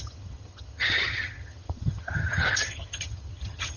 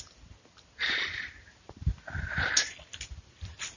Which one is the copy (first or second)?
first